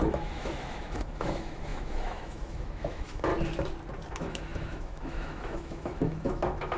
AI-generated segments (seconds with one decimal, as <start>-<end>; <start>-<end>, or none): 0.0-3.3; 4.1-6.8